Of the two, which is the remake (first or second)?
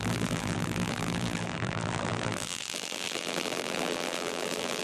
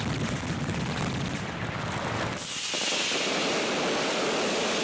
first